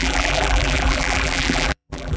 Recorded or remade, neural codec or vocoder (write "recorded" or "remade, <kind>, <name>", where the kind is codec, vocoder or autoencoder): remade, vocoder, BigVGAN v2